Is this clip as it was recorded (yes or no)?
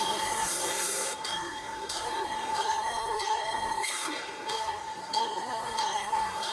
no